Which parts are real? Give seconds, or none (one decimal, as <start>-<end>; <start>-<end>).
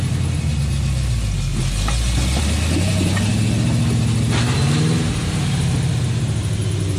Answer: 0.0-7.0